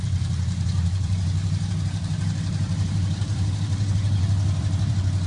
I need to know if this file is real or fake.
fake